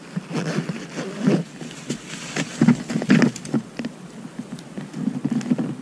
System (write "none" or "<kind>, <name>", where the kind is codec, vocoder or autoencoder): none